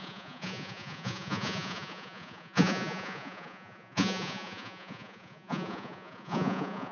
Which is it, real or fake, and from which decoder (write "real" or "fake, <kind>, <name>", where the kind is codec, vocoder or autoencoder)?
fake, vocoder, Vocos